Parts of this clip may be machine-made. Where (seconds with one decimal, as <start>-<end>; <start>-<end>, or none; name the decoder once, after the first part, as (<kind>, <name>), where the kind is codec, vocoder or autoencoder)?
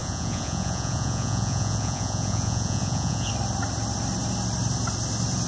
0.0-3.3 (vocoder, Vocos)